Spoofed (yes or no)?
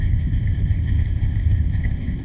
yes